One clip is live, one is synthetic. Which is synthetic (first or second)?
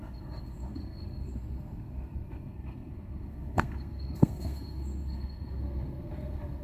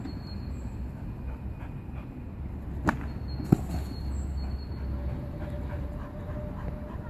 first